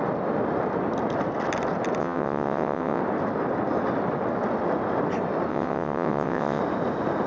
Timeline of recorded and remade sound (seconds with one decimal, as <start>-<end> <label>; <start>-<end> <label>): 0.0-2.0 recorded; 2.0-3.0 remade; 3.0-5.5 recorded; 5.5-6.6 remade; 6.6-7.3 recorded